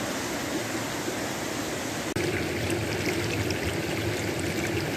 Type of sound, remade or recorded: recorded